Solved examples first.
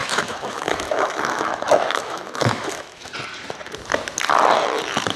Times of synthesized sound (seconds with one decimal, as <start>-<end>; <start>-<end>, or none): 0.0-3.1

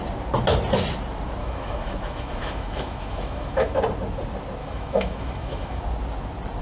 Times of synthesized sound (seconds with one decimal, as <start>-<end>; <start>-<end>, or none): 1.4-3.8; 4.6-5.8

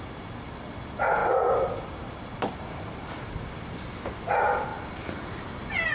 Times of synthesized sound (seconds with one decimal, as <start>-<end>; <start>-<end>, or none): none

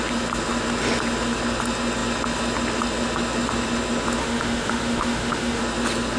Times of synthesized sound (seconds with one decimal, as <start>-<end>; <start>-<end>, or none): 4.2-5.6